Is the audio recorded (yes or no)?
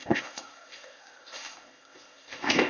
no